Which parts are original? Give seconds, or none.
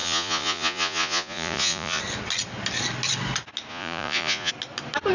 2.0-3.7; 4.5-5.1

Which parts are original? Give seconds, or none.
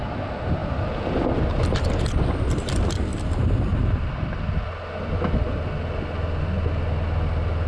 0.0-7.7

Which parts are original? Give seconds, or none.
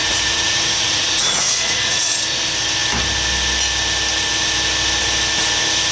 2.1-5.9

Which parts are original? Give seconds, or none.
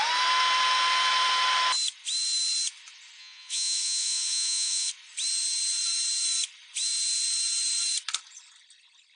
0.0-3.2; 4.9-9.2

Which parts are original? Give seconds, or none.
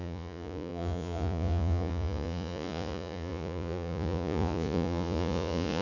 none